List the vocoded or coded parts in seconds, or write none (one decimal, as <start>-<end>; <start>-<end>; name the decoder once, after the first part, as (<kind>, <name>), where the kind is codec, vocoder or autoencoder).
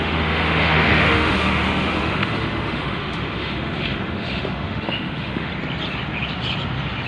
0.0-5.5 (autoencoder, DAC-VAE)